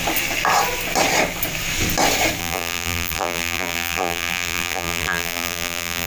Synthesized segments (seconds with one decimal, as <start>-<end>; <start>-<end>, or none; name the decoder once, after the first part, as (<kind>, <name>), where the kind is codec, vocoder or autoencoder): 2.4-6.1 (vocoder, BigVGAN v2)